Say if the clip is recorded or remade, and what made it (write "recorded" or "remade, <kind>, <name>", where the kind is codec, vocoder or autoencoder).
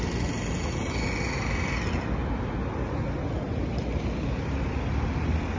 recorded